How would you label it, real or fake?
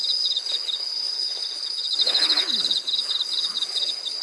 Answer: fake